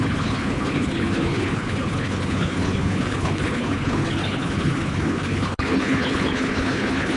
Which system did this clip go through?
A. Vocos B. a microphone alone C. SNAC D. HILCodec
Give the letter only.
D